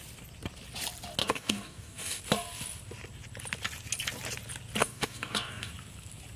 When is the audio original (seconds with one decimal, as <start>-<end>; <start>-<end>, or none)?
0.0-1.2; 2.2-4.8; 5.7-6.4